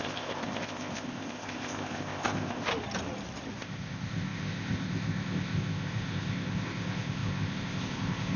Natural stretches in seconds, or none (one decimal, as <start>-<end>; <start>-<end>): 2.7-3.6